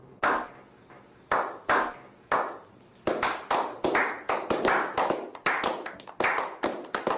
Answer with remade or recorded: recorded